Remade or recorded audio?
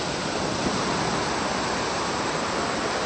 recorded